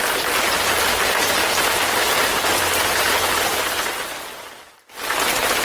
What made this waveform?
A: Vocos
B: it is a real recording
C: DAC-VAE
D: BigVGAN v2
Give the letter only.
B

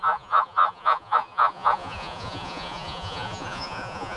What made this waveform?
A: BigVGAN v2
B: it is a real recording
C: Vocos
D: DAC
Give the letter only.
C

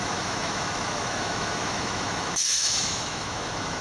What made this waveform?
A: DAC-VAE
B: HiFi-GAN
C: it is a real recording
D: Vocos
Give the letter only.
A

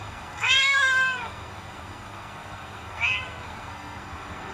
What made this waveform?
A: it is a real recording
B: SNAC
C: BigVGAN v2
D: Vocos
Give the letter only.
B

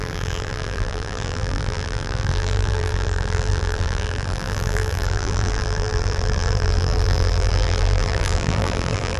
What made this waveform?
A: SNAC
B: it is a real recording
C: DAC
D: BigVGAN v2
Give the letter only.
D